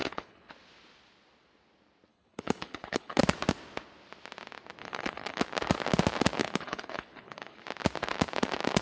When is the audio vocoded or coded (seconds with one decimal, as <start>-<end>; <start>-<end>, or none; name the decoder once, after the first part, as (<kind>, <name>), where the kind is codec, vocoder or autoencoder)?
0.0-0.5 (codec, HILCodec); 2.1-3.2; 4.8-5.4; 6.4-7.6